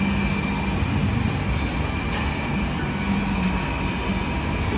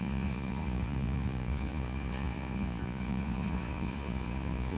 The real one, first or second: first